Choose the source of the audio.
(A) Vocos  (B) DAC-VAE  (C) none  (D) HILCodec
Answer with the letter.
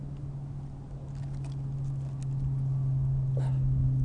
C